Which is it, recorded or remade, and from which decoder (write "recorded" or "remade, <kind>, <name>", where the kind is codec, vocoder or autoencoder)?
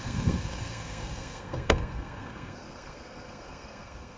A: remade, codec, SNAC